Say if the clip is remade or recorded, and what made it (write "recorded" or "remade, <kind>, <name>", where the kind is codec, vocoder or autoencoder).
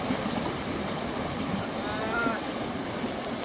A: recorded